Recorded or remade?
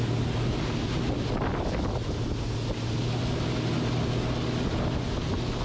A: recorded